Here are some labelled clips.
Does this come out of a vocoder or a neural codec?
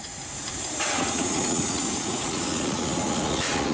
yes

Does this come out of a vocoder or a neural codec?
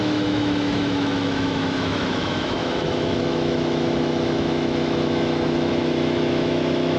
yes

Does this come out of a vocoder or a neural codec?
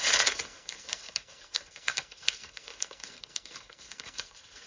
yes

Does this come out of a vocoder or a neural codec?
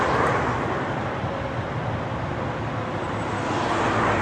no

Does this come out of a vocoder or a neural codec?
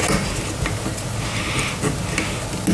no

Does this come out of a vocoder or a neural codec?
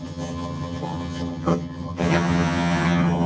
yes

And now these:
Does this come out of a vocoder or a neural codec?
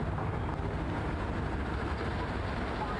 no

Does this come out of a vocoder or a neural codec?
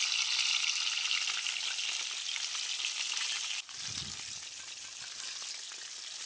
no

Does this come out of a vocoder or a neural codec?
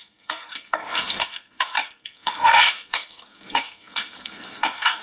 yes